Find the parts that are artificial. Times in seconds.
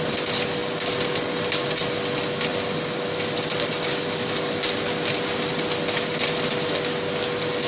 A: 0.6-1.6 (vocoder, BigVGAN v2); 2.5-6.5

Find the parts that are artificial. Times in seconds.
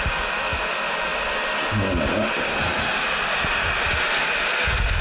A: none